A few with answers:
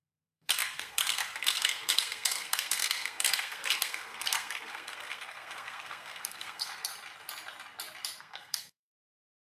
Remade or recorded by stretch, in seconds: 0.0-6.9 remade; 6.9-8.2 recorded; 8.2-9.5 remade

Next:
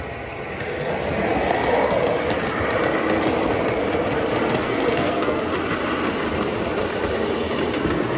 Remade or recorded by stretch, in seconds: 0.0-4.6 recorded; 4.6-5.4 remade; 5.4-8.2 recorded

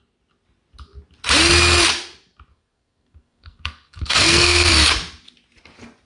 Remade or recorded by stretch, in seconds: 0.0-2.5 recorded; 2.5-4.7 remade; 4.7-6.1 recorded

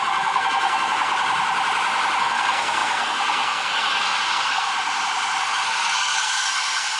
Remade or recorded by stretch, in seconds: 0.0-1.1 remade; 1.1-2.2 recorded; 2.2-4.7 remade; 4.7-5.4 recorded; 5.4-7.0 remade

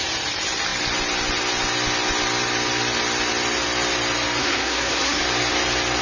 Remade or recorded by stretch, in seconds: 0.0-4.4 recorded; 4.4-5.2 remade; 5.2-6.0 recorded

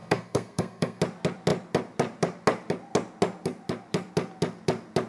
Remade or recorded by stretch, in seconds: 0.0-1.0 remade; 1.0-5.1 recorded

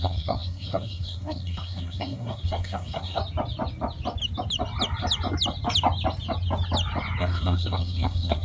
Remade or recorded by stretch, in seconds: 0.0-3.2 remade; 3.2-7.2 recorded; 7.2-8.4 remade

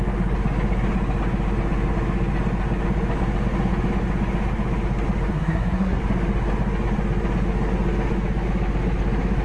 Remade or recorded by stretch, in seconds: 0.0-5.3 recorded; 5.3-6.0 remade; 6.0-9.4 recorded